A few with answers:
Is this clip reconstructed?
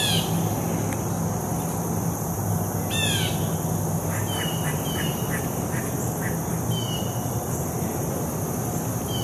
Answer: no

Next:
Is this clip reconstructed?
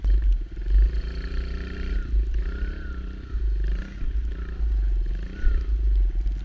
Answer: no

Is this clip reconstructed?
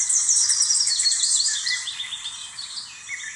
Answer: yes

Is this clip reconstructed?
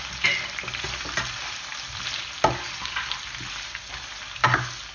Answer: no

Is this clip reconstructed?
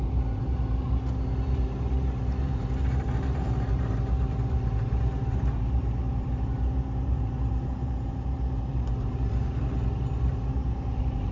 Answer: yes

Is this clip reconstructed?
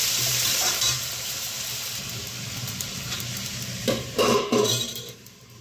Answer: yes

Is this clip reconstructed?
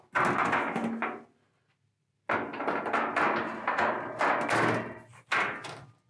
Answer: no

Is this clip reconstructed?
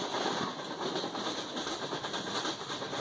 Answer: no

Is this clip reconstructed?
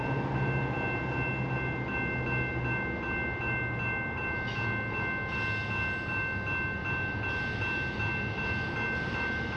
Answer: no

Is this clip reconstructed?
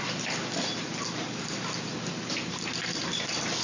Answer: yes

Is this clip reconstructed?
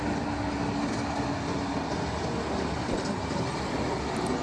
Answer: no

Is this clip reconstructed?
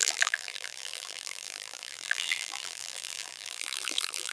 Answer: yes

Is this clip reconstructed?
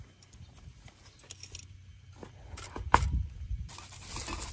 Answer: no